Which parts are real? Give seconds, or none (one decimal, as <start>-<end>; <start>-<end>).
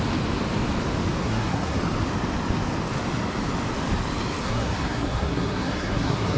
0.0-1.2; 1.8-4.4